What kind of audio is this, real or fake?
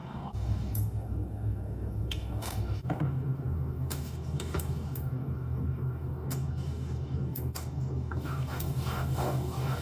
fake